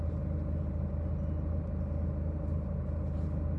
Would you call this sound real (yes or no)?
yes